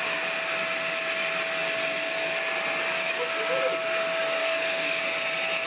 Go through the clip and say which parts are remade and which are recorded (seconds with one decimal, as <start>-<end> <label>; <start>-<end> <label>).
0.0-4.4 recorded; 4.4-5.0 remade; 5.0-5.7 recorded